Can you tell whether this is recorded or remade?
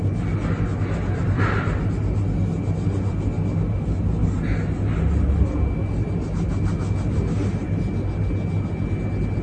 recorded